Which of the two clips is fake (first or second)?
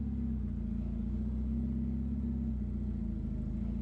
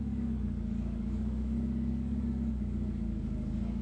second